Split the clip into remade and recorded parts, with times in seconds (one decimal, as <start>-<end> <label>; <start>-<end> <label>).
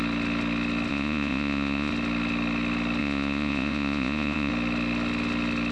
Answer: 0.0-0.9 recorded; 0.9-1.9 remade; 1.9-3.0 recorded; 3.0-4.5 remade; 4.5-5.7 recorded